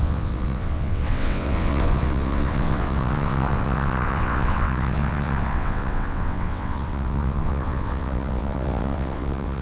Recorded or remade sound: remade